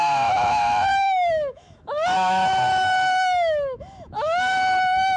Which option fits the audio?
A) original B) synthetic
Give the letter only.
B